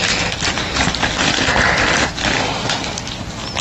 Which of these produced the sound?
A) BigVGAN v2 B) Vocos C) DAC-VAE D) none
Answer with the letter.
D